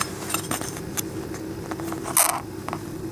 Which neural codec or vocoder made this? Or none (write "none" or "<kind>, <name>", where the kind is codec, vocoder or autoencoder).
none